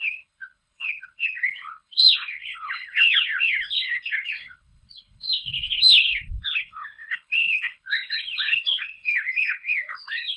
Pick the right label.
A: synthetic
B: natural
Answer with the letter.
A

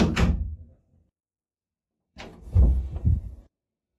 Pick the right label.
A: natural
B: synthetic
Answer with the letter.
B